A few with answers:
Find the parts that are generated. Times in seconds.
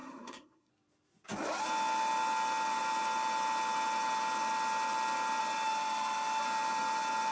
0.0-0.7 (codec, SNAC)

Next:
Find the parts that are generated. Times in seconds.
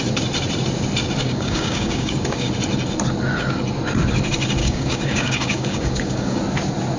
1.2-2.5 (codec, DAC); 4.6-6.4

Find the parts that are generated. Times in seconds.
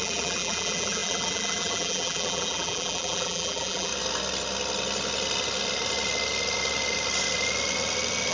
0.0-3.9 (vocoder, BigVGAN v2)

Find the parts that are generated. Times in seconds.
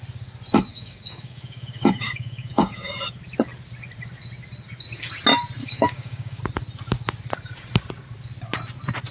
0.7-3.2 (codec, DAC); 5.6-6.4